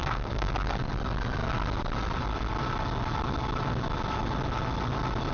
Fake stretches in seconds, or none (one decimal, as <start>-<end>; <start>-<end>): 0.0-0.5

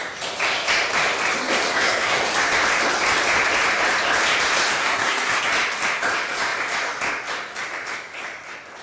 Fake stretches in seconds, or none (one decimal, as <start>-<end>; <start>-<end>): 1.7-2.2; 4.8-5.4

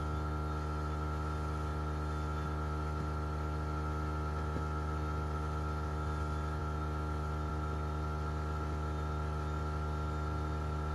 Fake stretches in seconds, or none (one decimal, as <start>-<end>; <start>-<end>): none

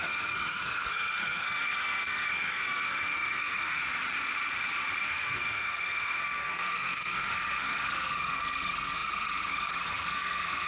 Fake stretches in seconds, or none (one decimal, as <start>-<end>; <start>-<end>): 0.0-3.8; 5.0-10.7

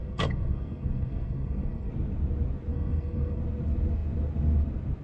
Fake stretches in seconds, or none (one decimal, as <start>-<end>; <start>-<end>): 0.0-1.9; 2.7-3.4

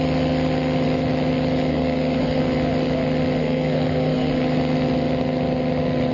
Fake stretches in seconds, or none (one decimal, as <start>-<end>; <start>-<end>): 1.7-2.4; 3.4-4.3